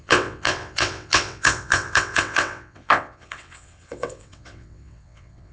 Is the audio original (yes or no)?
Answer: no